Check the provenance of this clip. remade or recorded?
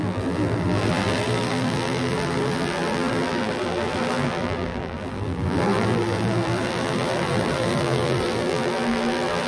remade